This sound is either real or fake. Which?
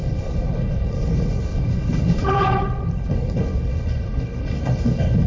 fake